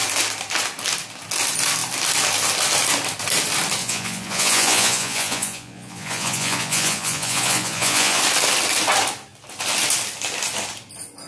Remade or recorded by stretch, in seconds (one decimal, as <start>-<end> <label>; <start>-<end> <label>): 0.0-3.8 recorded; 3.8-8.2 remade; 8.2-11.3 recorded